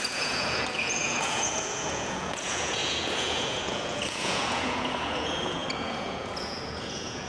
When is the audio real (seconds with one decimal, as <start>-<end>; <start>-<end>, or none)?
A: none